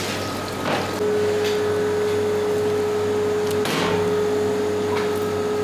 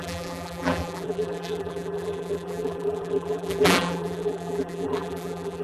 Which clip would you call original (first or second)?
first